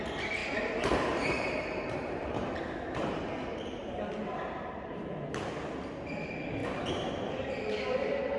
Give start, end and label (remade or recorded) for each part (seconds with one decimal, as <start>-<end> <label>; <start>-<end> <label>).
0.0-0.4 recorded; 0.4-2.5 remade; 2.5-3.8 recorded; 3.8-5.3 remade; 5.3-6.6 recorded; 6.6-7.1 remade; 7.1-8.4 recorded